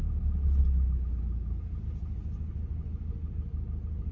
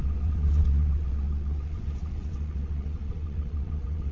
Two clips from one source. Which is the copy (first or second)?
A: second